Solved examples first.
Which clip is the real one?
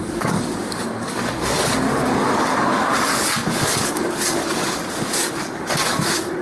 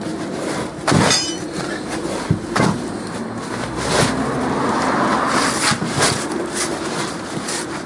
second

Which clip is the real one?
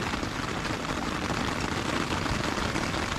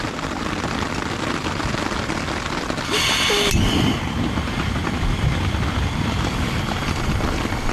second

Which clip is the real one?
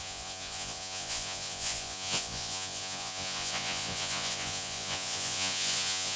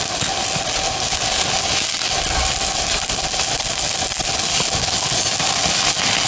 second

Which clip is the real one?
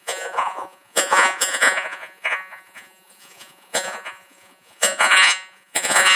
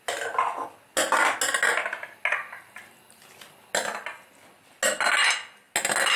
second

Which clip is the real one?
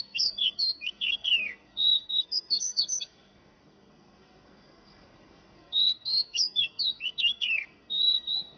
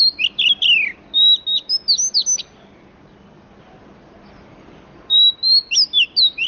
second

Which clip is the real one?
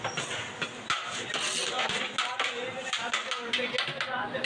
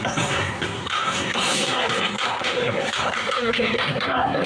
first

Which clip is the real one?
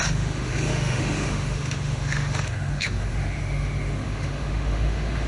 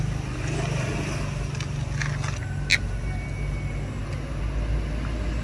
second